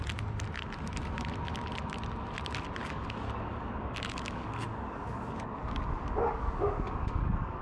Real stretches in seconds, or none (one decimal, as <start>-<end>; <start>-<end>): 0.0-2.8